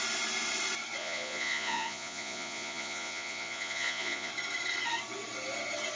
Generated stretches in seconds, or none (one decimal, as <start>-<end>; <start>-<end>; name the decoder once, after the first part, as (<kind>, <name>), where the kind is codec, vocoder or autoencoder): 1.0-4.3 (vocoder, Vocos)